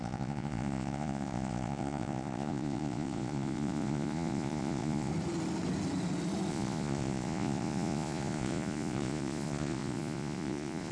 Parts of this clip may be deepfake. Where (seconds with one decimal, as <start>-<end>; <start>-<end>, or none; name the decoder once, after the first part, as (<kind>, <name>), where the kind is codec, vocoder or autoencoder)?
0.0-5.1 (vocoder, Vocos); 6.5-10.9

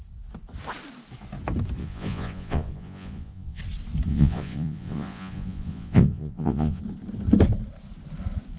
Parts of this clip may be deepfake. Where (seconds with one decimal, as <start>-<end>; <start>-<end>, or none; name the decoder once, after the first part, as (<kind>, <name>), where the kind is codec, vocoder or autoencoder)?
1.8-3.6 (vocoder, Vocos); 4.1-6.8